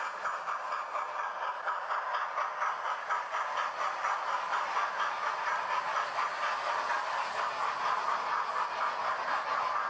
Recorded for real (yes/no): yes